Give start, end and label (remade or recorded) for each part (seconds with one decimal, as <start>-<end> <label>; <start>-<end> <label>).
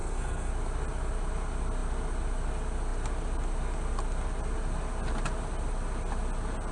0.0-0.5 remade; 0.5-6.7 recorded